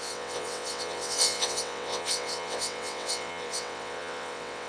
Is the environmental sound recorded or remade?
remade